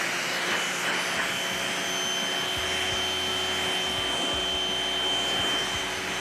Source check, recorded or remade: recorded